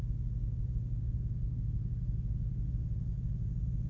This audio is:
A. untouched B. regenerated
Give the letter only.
A